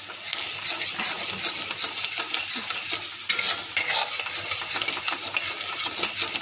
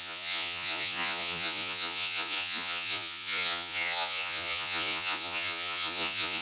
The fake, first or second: second